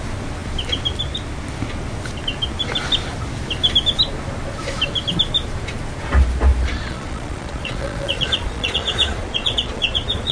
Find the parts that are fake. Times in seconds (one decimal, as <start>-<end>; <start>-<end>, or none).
6.7-10.3